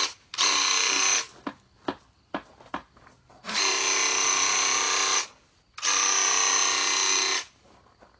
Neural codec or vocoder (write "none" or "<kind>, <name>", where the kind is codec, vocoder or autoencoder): none